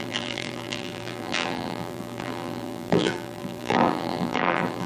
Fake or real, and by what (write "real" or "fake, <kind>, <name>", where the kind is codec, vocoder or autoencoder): fake, vocoder, BigVGAN v2